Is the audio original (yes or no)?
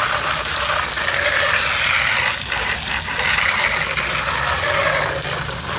yes